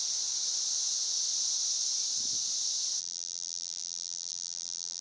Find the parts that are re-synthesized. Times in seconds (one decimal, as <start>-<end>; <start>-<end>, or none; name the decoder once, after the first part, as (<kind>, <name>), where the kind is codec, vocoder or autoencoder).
3.0-5.0 (vocoder, BigVGAN v2)